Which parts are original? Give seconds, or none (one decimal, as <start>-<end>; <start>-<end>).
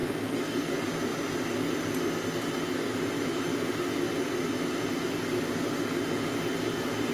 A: 0.7-7.1